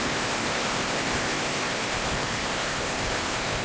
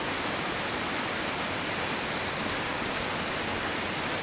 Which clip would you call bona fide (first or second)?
second